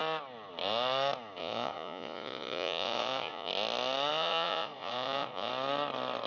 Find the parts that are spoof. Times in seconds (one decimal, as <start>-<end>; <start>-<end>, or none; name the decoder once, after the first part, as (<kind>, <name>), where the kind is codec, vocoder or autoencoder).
1.4-3.5 (vocoder, Vocos); 4.1-5.5